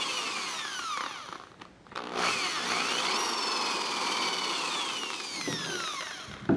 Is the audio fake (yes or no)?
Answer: no